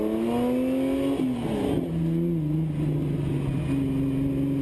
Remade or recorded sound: recorded